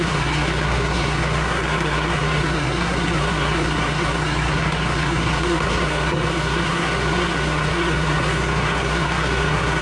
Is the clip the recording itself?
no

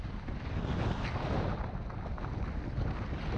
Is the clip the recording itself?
yes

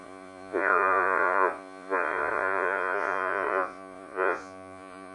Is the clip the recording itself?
no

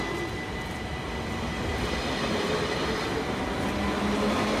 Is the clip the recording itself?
yes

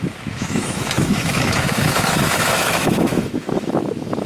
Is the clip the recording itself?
no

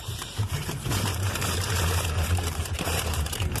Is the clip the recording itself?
no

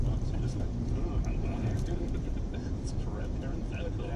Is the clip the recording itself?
no